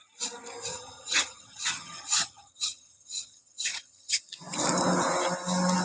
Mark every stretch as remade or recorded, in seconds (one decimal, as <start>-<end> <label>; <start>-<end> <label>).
0.0-0.7 recorded; 0.7-4.2 remade; 4.2-5.8 recorded